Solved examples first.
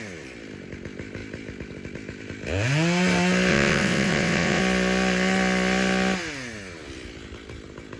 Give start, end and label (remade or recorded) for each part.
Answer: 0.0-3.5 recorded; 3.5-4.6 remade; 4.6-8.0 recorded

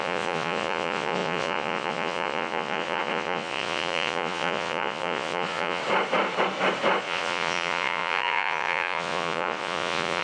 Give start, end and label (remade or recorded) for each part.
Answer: 0.0-5.8 remade; 5.8-7.0 recorded; 7.0-10.2 remade

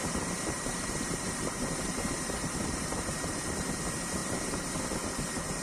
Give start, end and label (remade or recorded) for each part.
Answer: 0.0-3.4 remade; 3.4-4.2 recorded; 4.2-4.8 remade; 4.8-5.6 recorded

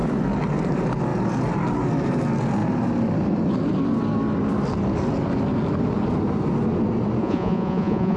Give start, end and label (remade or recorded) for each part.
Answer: 0.0-7.2 recorded; 7.2-8.2 remade

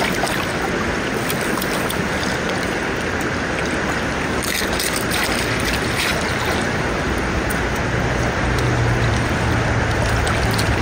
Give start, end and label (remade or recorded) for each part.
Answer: 0.0-10.8 recorded

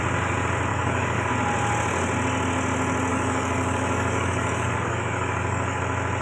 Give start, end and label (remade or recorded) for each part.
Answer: 0.0-0.7 recorded; 0.7-1.3 remade; 1.3-3.1 recorded; 3.1-5.8 remade; 5.8-6.2 recorded

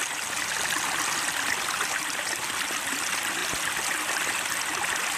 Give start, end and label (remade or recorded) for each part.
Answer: 0.0-5.2 recorded

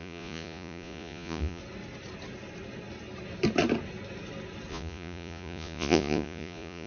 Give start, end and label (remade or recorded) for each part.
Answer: 0.0-1.6 remade; 1.6-4.7 recorded; 4.7-6.9 remade